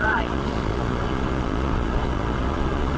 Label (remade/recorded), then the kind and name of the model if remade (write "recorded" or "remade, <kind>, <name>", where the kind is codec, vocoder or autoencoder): remade, vocoder, Vocos